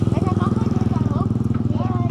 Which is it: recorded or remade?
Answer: recorded